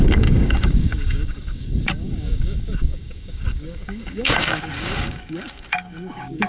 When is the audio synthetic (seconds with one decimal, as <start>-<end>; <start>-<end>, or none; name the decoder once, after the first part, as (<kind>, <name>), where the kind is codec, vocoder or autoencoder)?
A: 0.0-6.5 (codec, DAC)